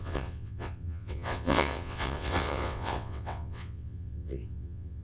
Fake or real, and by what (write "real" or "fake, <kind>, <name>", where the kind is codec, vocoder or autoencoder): fake, vocoder, WaveNeXt